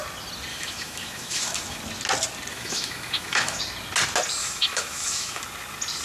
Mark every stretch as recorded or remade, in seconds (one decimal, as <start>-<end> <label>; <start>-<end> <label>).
0.0-0.5 recorded; 0.5-1.8 remade; 1.8-2.5 recorded; 2.5-3.6 remade; 3.6-4.4 recorded; 4.4-5.4 remade; 5.4-6.0 recorded